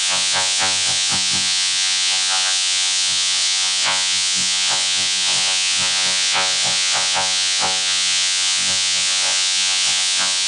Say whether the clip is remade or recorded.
remade